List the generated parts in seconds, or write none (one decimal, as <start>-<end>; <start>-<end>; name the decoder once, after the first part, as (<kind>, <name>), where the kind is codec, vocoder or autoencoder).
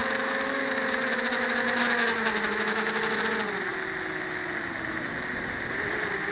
0.0-3.2 (autoencoder, DAC-VAE)